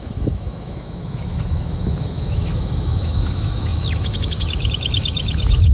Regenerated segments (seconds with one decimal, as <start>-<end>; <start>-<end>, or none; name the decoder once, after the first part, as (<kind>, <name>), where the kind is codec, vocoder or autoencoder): 0.0-5.7 (autoencoder, DAC-VAE)